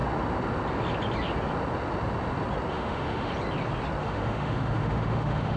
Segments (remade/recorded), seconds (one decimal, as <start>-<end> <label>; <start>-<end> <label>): 0.0-2.7 recorded; 2.7-3.3 remade; 3.3-4.0 recorded; 4.0-5.6 remade